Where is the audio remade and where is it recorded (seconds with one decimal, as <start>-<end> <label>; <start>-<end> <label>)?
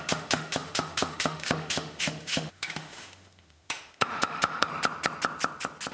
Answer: 0.0-4.7 remade; 4.7-5.9 recorded